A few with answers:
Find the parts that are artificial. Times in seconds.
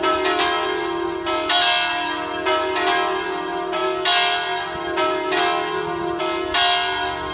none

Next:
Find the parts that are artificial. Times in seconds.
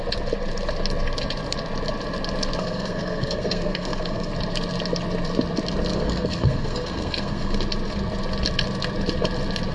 2.6-4.3 (codec, SNAC); 5.9-7.6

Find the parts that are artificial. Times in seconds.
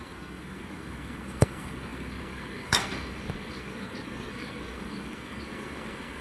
0.0-6.2 (codec, SNAC)